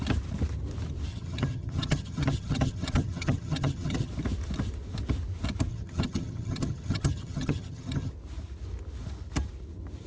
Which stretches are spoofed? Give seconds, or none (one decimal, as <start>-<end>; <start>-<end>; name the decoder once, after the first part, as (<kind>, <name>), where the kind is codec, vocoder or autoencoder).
1.1-4.1 (vocoder, HiFi-GAN); 5.7-8.1